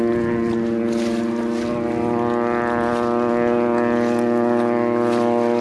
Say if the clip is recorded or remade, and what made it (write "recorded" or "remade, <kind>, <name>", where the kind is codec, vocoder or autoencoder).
recorded